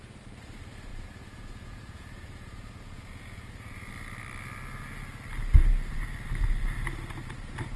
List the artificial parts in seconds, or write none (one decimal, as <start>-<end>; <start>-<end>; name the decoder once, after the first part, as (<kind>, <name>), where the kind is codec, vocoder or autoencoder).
0.9-3.9 (vocoder, Vocos)